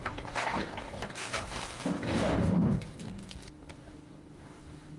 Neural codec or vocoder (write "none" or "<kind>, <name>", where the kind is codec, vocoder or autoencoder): codec, DAC